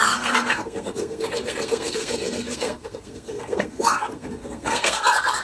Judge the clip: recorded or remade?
remade